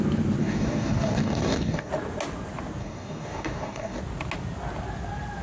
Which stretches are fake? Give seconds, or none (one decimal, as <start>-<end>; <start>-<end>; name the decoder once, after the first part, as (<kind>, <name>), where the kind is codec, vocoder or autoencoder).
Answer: 0.4-1.9 (codec, DAC); 2.8-4.0